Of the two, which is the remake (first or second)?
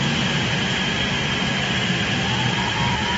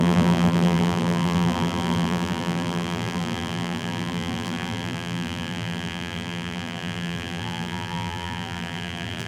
second